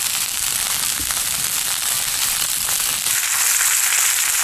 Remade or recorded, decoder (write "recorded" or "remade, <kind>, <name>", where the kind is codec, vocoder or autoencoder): remade, vocoder, BigVGAN v2